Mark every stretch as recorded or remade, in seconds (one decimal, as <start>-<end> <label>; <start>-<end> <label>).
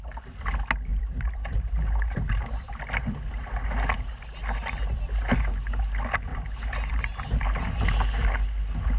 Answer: 0.0-0.9 recorded; 0.9-2.7 remade; 2.7-6.3 recorded; 6.3-7.0 remade; 7.0-9.0 recorded